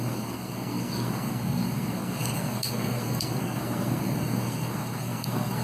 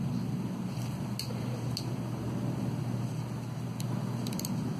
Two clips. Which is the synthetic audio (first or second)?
first